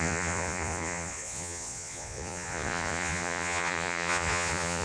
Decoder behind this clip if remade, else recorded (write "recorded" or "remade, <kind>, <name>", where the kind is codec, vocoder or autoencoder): remade, vocoder, Vocos